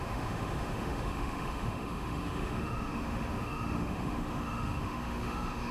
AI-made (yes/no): yes